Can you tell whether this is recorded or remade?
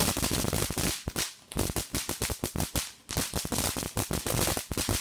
recorded